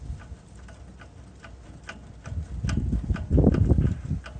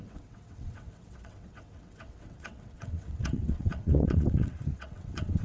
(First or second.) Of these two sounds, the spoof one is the second